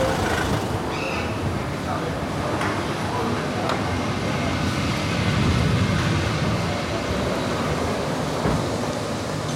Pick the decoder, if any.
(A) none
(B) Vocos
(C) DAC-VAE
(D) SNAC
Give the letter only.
A